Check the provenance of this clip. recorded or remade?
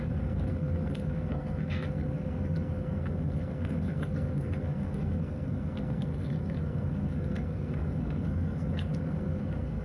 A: remade